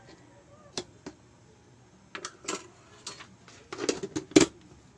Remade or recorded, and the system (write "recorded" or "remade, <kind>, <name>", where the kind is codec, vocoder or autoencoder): recorded